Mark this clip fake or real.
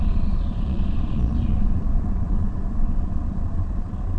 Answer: fake